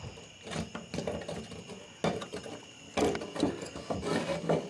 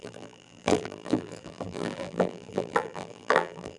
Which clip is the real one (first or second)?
first